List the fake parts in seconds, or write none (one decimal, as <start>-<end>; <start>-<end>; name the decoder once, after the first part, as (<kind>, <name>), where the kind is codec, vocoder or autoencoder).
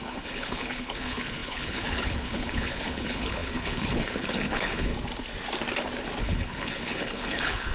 0.0-4.9 (codec, HILCodec); 6.2-7.7